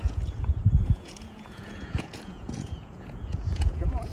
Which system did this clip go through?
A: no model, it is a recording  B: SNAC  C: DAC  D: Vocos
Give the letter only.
D